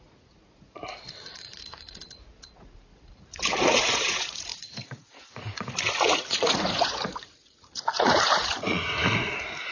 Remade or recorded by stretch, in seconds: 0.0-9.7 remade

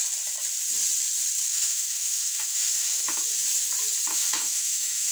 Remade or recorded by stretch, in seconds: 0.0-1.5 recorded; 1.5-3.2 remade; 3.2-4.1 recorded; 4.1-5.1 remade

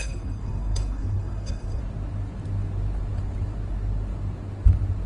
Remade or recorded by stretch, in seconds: 0.0-1.8 remade; 1.8-5.1 recorded

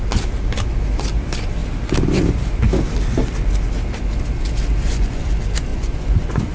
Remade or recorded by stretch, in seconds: 0.0-4.8 recorded; 4.8-5.3 remade; 5.3-5.7 recorded; 5.7-6.5 remade

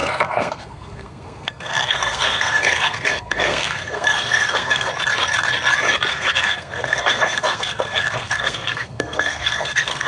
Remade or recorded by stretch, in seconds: 0.0-4.9 remade; 4.9-6.1 recorded; 6.1-10.1 remade

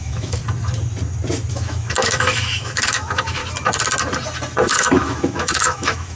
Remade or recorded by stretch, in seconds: 0.0-0.4 remade; 0.4-1.5 recorded; 1.5-3.4 remade; 3.4-4.7 recorded; 4.7-6.2 remade

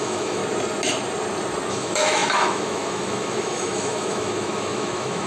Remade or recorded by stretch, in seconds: 0.0-0.4 remade; 0.4-1.7 recorded; 1.7-5.3 remade